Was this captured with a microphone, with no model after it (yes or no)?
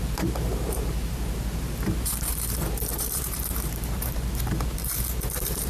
no